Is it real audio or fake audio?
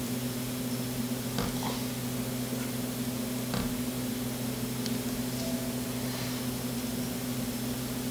real